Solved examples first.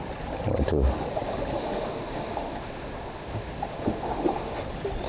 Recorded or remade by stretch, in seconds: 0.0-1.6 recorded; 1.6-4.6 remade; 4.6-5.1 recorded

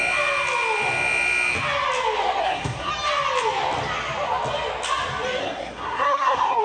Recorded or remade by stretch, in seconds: 0.0-2.4 recorded; 2.4-2.9 remade; 2.9-5.4 recorded; 5.4-6.6 remade

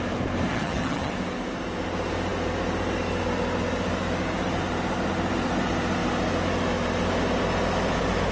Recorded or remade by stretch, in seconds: 0.0-0.5 recorded; 0.5-1.1 remade; 1.1-8.3 recorded